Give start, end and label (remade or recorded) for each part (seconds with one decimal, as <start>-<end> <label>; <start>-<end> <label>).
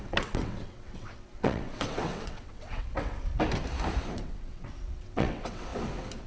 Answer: 0.0-3.3 remade; 3.3-4.1 recorded; 4.1-5.7 remade; 5.7-6.3 recorded